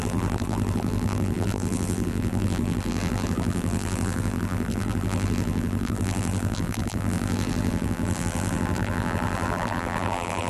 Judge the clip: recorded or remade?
remade